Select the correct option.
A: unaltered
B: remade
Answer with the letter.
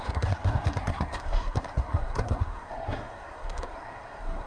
B